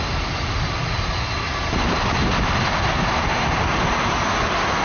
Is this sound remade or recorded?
recorded